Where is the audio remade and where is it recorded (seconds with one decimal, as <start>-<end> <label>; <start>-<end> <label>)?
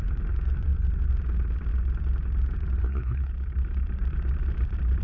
0.0-2.8 recorded; 2.8-3.3 remade; 3.3-5.0 recorded